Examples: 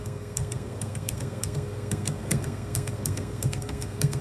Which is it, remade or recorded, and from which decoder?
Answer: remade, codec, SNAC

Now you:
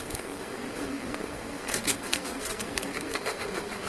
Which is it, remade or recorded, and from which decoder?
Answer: remade, codec, SNAC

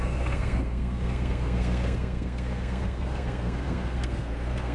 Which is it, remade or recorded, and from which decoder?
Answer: remade, codec, SNAC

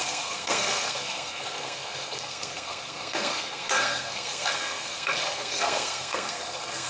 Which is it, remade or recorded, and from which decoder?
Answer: remade, codec, SNAC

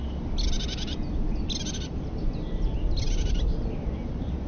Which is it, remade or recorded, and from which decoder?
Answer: recorded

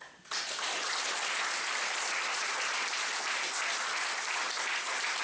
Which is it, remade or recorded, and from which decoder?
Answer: recorded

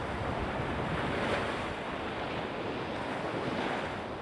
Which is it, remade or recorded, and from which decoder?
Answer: recorded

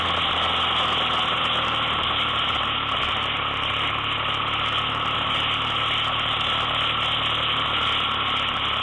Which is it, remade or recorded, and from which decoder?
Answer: recorded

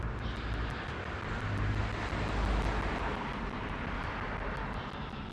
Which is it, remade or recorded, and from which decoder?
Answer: recorded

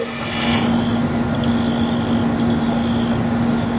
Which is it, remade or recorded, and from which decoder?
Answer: recorded